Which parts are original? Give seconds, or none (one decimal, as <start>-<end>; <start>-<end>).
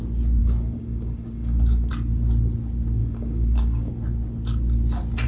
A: 0.0-0.4; 1.9-3.0; 3.9-5.3